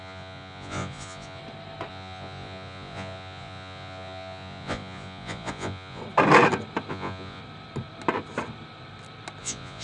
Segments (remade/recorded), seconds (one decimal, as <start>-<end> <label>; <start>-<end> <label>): 0.0-1.4 remade; 1.4-1.9 recorded; 1.9-6.0 remade; 6.0-6.9 recorded; 6.9-7.4 remade; 7.4-9.4 recorded; 9.4-9.8 remade